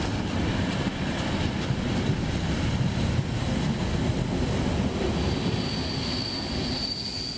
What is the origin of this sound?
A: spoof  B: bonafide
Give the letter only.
B